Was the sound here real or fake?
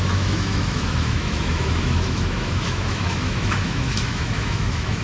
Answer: fake